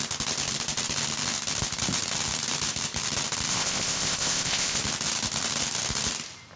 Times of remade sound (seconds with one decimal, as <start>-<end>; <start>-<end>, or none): 3.5-4.8